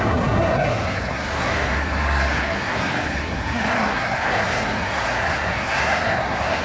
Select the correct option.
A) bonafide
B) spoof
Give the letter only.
B